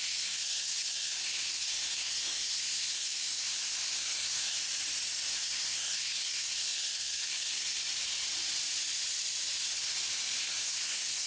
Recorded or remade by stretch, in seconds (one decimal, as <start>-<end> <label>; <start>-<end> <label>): 0.0-4.6 remade; 4.6-5.3 recorded; 5.3-7.8 remade; 7.8-10.4 recorded; 10.4-11.3 remade